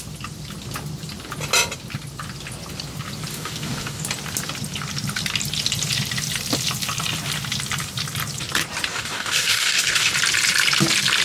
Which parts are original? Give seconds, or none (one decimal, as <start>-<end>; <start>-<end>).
0.0-3.3; 4.0-8.9; 10.1-11.2